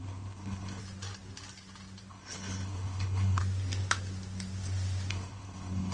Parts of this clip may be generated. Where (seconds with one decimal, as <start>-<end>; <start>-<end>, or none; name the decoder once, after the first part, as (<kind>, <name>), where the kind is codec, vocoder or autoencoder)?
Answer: 0.0-0.8 (codec, HILCodec); 2.1-3.4; 5.1-5.9